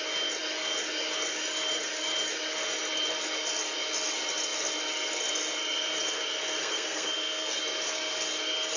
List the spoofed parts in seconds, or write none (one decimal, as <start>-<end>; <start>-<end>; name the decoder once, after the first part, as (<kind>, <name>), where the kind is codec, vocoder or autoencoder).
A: 6.6-7.6 (codec, SNAC)